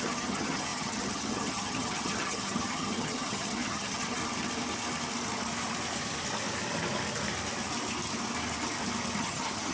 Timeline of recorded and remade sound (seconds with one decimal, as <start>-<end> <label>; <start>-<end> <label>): 0.0-4.2 remade; 4.2-9.2 recorded; 9.2-9.7 remade